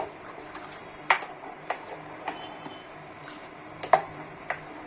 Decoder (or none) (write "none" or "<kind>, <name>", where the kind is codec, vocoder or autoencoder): vocoder, BigVGAN v2